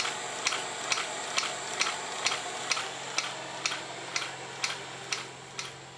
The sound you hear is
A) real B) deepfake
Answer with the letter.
A